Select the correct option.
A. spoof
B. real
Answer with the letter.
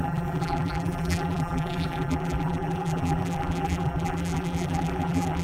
A